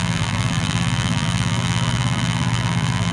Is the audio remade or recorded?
remade